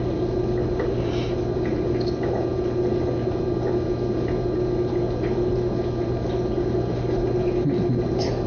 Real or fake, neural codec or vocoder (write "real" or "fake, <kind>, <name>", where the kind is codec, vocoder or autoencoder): real